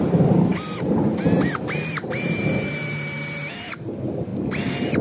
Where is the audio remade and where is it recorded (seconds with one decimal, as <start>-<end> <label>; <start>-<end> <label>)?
0.0-0.5 remade; 0.5-1.5 recorded; 1.5-4.3 remade; 4.3-5.0 recorded